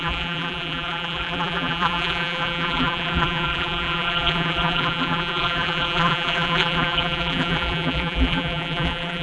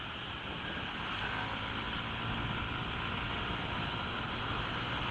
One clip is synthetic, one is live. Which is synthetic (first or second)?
first